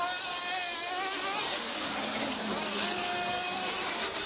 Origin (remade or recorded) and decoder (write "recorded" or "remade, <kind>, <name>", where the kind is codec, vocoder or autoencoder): recorded